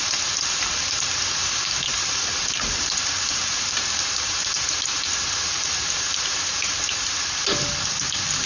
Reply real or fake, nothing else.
fake